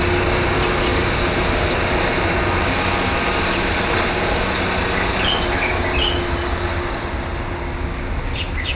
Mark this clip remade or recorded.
recorded